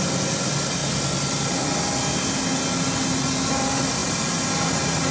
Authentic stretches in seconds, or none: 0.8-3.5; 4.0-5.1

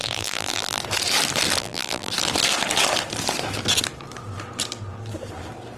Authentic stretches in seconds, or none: 0.8-1.6; 2.1-5.8

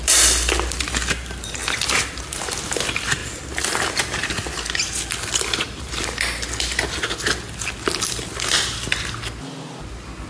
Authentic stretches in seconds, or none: 0.0-10.3

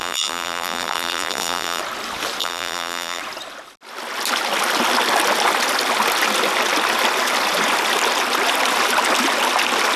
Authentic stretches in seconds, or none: 1.8-2.4; 3.2-10.0

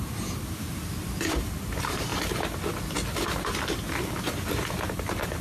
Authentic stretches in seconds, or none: 2.1-5.4

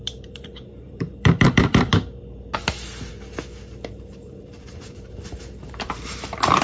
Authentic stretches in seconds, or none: 1.9-2.6; 3.1-3.9